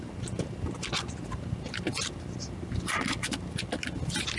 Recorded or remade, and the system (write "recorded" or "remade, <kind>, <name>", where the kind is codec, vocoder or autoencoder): recorded